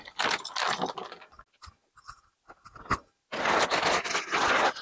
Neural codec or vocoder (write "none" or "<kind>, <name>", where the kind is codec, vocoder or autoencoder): none